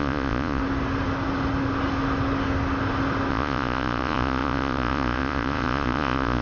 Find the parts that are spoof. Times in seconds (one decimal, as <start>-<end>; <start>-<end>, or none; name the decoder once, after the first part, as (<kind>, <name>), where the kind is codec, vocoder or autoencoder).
0.0-0.6 (vocoder, Vocos); 3.3-6.4

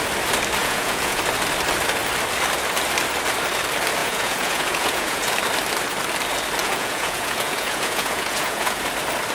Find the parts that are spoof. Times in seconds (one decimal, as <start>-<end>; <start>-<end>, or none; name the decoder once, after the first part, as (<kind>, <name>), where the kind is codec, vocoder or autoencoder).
0.6-1.2 (vocoder, Vocos); 4.0-5.3; 6.6-8.8